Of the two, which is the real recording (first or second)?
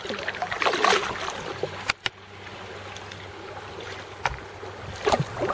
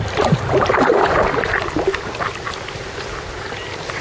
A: first